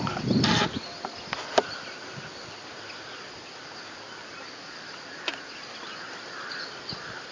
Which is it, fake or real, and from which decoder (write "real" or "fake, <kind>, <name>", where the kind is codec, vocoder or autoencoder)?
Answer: real